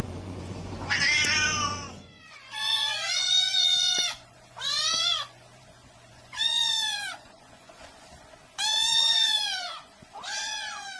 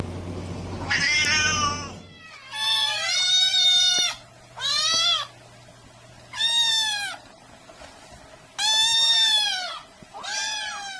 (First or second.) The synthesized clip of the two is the first